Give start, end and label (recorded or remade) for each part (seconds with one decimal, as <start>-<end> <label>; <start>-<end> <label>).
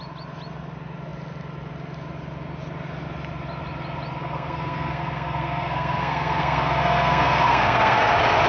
0.0-4.2 recorded; 4.2-8.1 remade; 8.1-8.5 recorded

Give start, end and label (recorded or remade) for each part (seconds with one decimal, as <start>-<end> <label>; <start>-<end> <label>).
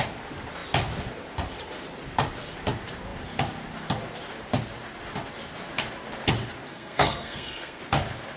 0.0-6.7 recorded; 6.7-7.8 remade; 7.8-8.4 recorded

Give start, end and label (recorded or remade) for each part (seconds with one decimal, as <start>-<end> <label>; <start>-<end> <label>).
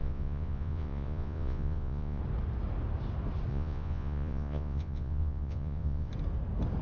0.0-2.2 remade; 2.2-3.5 recorded; 3.5-6.1 remade; 6.1-6.8 recorded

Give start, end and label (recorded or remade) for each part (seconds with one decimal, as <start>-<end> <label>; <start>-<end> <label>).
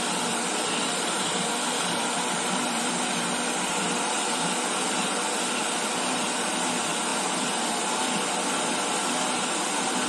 0.0-10.1 remade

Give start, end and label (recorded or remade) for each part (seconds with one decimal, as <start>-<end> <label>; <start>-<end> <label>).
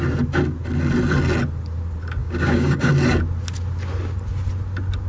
0.0-2.2 recorded; 2.2-2.9 remade; 2.9-5.1 recorded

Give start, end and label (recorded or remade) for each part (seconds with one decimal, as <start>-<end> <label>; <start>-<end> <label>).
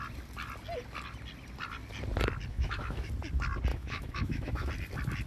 0.0-2.5 recorded; 2.5-3.1 remade; 3.1-3.7 recorded; 3.7-4.7 remade; 4.7-5.3 recorded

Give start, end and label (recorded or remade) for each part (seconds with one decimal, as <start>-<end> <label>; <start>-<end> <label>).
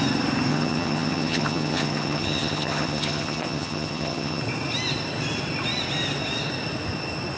0.0-0.5 recorded; 0.5-4.4 remade; 4.4-7.4 recorded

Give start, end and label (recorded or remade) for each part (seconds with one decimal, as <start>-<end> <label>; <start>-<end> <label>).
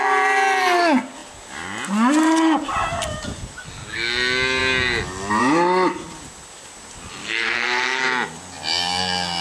0.0-7.2 recorded; 7.2-8.0 remade; 8.0-9.4 recorded